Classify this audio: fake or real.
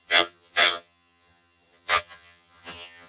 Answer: fake